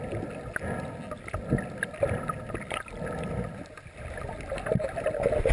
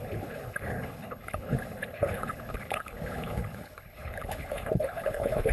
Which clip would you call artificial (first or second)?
second